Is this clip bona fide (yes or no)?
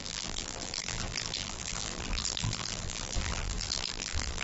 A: no